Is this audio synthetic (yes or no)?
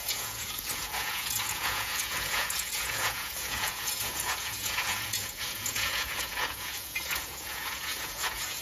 yes